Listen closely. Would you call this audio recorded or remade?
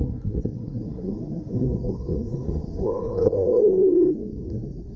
remade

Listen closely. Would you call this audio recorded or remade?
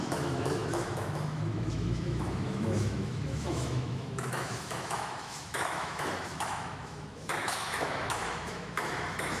remade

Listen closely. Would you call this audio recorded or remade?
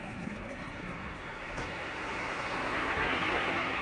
remade